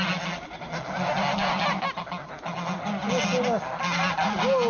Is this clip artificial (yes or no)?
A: no